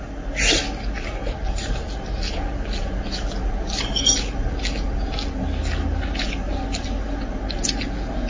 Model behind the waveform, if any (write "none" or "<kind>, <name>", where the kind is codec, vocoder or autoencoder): none